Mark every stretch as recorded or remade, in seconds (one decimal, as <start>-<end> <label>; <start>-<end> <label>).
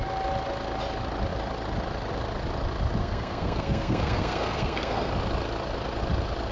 0.0-3.0 recorded; 3.0-5.1 remade; 5.1-6.5 recorded